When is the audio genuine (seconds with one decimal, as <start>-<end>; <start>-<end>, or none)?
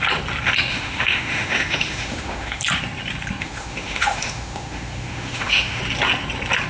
0.0-0.7; 2.6-3.4; 5.8-6.7